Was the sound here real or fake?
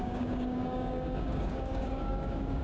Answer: fake